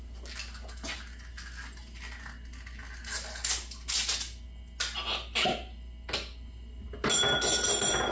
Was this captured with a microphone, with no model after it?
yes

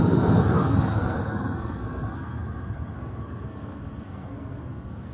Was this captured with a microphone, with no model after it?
no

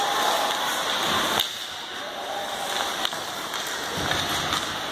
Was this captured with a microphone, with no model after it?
yes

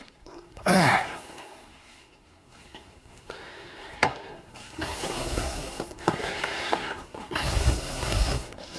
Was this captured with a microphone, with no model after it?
no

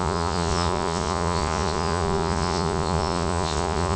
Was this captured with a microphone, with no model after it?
no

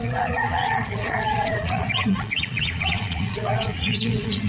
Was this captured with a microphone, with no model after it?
no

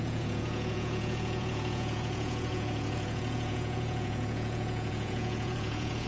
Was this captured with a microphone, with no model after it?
no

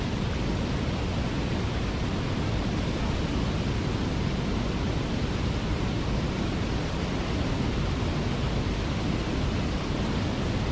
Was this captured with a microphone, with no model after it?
yes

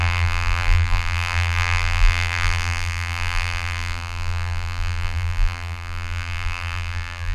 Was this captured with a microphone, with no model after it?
no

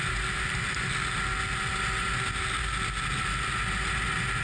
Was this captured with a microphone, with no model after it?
yes